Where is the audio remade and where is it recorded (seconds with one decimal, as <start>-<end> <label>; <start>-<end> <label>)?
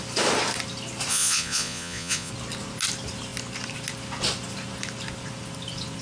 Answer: 0.0-1.1 recorded; 1.1-2.3 remade; 2.3-6.0 recorded